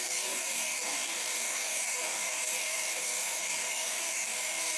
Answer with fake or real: fake